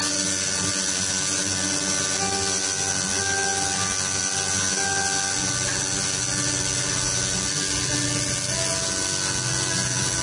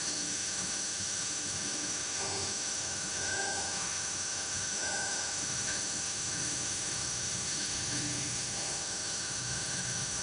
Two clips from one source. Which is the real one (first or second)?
first